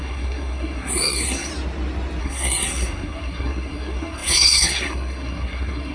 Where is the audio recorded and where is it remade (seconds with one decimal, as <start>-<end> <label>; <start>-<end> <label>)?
0.0-1.5 remade; 1.5-2.2 recorded; 2.2-5.9 remade

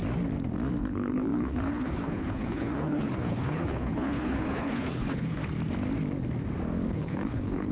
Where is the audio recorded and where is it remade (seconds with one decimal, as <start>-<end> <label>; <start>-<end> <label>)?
0.0-0.8 recorded; 0.8-5.4 remade; 5.4-6.9 recorded; 6.9-7.7 remade